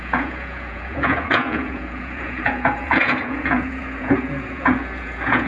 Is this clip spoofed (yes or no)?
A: yes